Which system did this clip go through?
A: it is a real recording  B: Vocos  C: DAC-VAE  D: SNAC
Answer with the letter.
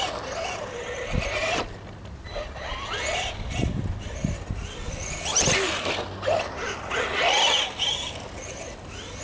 A